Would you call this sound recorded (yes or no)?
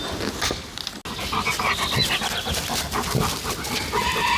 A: yes